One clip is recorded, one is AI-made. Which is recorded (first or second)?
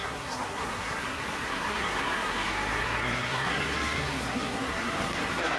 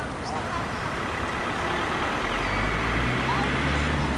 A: second